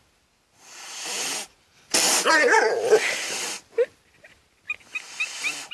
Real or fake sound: real